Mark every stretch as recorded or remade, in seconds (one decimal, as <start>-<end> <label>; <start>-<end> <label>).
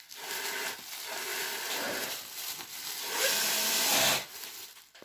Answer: 0.0-1.3 recorded; 1.3-4.3 remade; 4.3-5.0 recorded